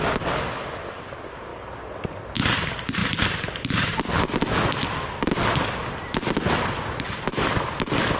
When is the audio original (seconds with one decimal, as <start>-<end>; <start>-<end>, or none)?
0.0-8.2